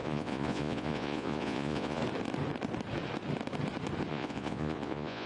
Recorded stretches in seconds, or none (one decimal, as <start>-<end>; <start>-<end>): 2.0-4.1